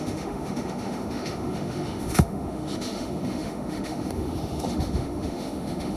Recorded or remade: remade